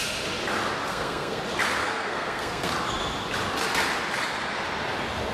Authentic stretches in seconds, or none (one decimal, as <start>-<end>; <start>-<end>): 0.0-0.9; 1.4-1.8; 2.7-5.3